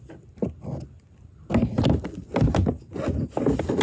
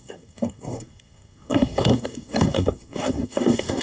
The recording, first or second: first